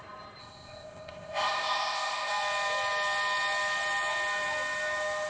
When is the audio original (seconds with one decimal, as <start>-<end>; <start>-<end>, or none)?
0.0-0.4; 2.3-5.3